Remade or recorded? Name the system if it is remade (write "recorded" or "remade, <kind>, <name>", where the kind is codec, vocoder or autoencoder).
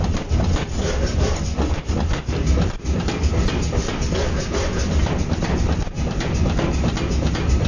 recorded